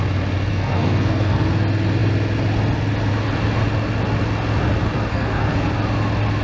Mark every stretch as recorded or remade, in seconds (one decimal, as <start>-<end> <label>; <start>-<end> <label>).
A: 0.0-0.5 recorded; 0.5-1.5 remade; 1.5-5.1 recorded; 5.1-5.7 remade; 5.7-6.4 recorded